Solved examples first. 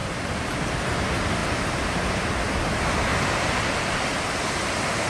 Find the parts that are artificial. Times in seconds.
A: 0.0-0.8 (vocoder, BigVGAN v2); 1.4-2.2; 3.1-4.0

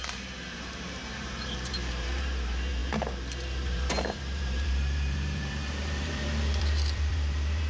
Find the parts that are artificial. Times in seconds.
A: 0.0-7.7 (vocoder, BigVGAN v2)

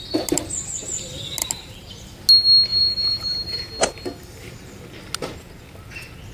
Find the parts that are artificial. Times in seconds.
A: 1.4-1.9 (vocoder, BigVGAN v2); 2.7-3.6

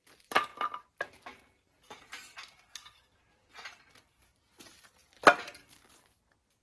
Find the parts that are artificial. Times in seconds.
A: 0.0-0.5 (vocoder, BigVGAN v2); 4.5-5.0; 5.9-6.6

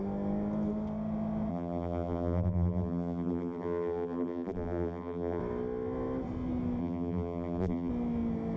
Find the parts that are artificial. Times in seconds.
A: 1.5-5.4 (vocoder, BigVGAN v2); 6.8-7.9

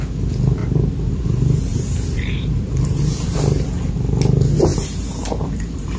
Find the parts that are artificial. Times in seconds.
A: 0.6-1.1 (vocoder, BigVGAN v2); 1.7-3.9; 4.7-6.0